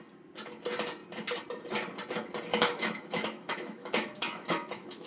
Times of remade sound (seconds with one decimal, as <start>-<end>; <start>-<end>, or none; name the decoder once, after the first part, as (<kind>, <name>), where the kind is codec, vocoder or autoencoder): 2.5-5.1 (autoencoder, DAC-VAE)